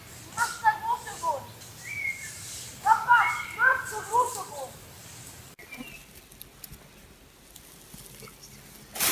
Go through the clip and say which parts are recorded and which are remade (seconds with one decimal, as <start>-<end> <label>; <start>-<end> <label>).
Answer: 0.0-0.6 recorded; 0.6-5.0 remade; 5.0-9.1 recorded

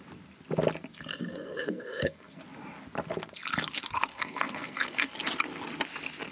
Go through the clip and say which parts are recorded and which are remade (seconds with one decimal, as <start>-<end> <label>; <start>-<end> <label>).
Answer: 0.0-1.1 recorded; 1.1-2.4 remade; 2.4-4.1 recorded; 4.1-5.1 remade; 5.1-6.3 recorded

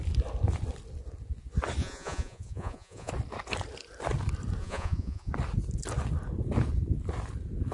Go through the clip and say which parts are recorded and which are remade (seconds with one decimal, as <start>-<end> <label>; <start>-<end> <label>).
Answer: 0.0-1.8 recorded; 1.8-3.1 remade; 3.1-4.6 recorded; 4.6-5.3 remade; 5.3-7.7 recorded

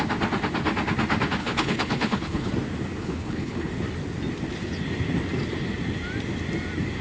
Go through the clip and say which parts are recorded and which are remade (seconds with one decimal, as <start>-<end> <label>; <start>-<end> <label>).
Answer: 0.0-1.4 recorded; 1.4-2.5 remade; 2.5-3.0 recorded; 3.0-3.7 remade; 3.7-7.0 recorded

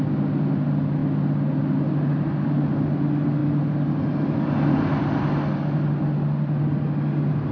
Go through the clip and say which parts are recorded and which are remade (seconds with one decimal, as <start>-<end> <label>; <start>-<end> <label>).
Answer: 0.0-7.5 recorded

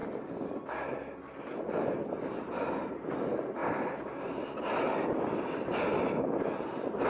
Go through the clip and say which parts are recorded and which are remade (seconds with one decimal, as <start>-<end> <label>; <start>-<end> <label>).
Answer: 0.0-3.6 recorded; 3.6-4.7 remade; 4.7-7.1 recorded